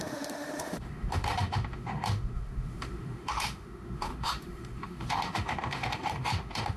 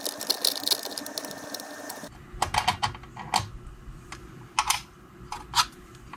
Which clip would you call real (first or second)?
second